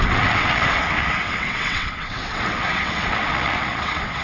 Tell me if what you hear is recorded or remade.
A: remade